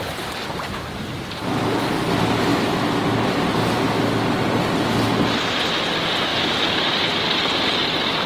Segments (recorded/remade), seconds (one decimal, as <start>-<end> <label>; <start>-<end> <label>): 0.0-8.3 recorded